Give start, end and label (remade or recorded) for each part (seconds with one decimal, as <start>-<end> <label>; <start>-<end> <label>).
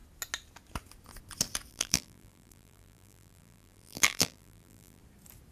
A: 0.0-1.7 recorded; 1.7-5.0 remade; 5.0-5.5 recorded